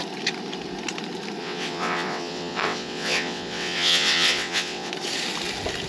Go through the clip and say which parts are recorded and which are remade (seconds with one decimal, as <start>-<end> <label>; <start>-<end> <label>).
0.0-1.4 recorded; 1.4-4.9 remade; 4.9-5.9 recorded